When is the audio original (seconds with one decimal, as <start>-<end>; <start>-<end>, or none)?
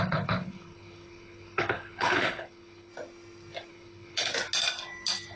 2.9-3.7; 4.3-5.4